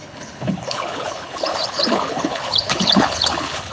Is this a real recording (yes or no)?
no